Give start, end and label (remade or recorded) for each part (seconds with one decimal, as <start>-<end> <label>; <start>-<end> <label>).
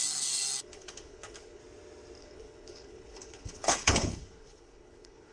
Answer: 0.0-0.6 recorded; 0.6-1.6 remade; 1.6-2.2 recorded; 2.2-5.3 remade